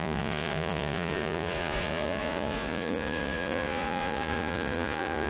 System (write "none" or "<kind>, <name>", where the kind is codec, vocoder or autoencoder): vocoder, Vocos